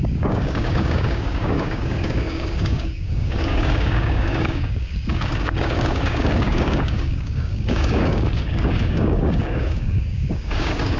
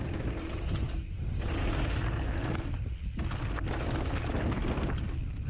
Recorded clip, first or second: second